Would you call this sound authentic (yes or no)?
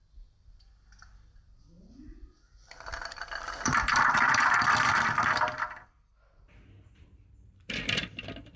no